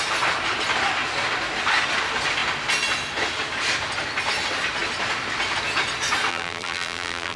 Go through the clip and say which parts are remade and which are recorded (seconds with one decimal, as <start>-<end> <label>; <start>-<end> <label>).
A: 0.0-6.3 recorded; 6.3-7.4 remade